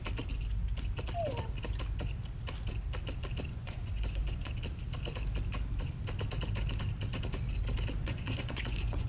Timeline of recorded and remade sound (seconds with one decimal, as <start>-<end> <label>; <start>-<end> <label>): 0.0-3.5 recorded; 3.5-4.5 remade; 4.5-8.0 recorded; 8.0-9.1 remade

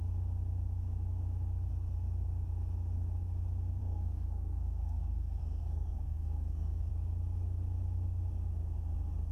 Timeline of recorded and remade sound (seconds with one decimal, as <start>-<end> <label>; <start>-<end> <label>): 0.0-3.8 recorded; 3.8-6.9 remade; 6.9-9.3 recorded